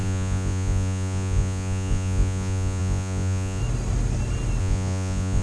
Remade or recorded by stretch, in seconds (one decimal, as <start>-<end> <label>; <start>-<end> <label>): 0.0-3.6 remade; 3.6-4.6 recorded; 4.6-5.4 remade